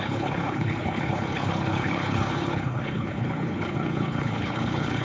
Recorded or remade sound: remade